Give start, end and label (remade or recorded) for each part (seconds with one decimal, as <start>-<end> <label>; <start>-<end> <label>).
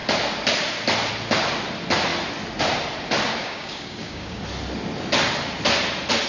0.0-3.4 recorded; 3.4-4.4 remade; 4.4-6.3 recorded